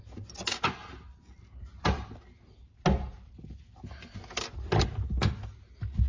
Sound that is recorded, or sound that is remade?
recorded